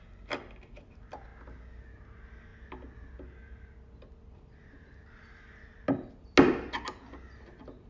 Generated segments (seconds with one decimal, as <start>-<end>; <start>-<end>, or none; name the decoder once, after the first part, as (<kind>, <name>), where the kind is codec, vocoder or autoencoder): none